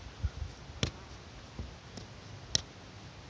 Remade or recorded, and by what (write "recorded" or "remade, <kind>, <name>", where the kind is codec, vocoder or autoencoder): recorded